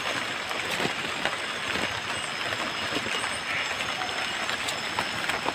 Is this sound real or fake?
real